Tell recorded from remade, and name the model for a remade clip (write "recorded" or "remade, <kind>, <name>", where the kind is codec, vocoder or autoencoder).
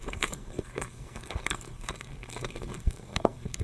remade, codec, SNAC